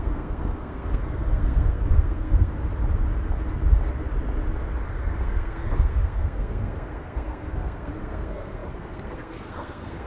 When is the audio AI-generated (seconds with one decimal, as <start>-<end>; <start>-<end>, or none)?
0.0-2.5; 5.0-10.1